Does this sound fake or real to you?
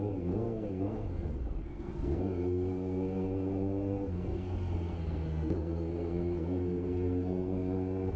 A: fake